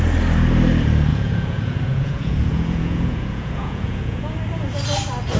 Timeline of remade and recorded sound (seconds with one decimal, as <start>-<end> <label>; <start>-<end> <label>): 0.0-1.1 recorded; 1.1-4.3 remade; 4.3-5.4 recorded